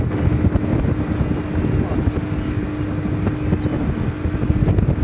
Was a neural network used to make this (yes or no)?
no